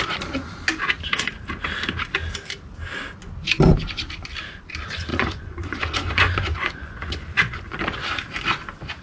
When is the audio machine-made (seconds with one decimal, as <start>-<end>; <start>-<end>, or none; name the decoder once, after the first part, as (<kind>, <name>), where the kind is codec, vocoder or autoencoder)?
5.1-7.8 (vocoder, Vocos)

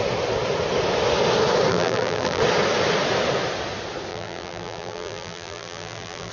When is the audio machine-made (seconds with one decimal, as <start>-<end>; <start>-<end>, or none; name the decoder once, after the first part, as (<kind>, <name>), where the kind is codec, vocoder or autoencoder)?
1.7-2.4 (vocoder, BigVGAN v2); 4.1-6.3

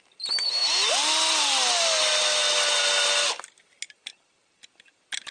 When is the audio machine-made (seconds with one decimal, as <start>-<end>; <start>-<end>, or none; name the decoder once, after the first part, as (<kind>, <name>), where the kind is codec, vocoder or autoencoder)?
none

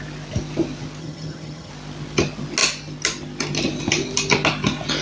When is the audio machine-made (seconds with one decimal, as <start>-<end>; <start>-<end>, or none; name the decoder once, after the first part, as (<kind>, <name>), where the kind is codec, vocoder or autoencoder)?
1.0-1.7 (vocoder, HiFi-GAN)

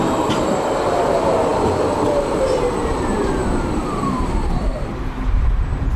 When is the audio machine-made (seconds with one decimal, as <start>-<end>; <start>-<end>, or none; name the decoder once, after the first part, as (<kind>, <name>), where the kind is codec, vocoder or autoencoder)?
0.0-6.0 (vocoder, BigVGAN v2)

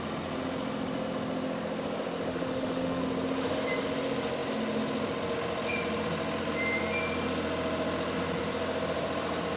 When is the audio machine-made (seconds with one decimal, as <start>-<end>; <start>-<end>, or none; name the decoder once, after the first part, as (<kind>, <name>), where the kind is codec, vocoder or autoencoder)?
2.3-3.0 (autoencoder, DAC-VAE)

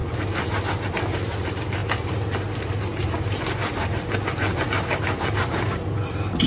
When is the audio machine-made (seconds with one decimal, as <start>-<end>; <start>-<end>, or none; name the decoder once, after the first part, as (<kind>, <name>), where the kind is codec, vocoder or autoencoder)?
none